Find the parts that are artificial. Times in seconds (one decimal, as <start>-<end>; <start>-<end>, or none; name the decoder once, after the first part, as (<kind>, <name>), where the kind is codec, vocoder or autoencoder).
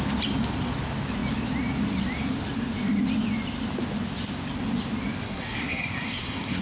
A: 5.2-6.6 (codec, SNAC)